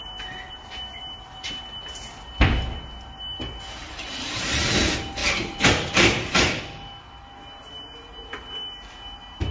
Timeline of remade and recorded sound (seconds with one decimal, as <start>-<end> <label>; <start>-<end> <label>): 0.0-3.8 recorded; 3.8-4.6 remade; 4.6-5.2 recorded; 5.2-6.6 remade; 6.6-9.5 recorded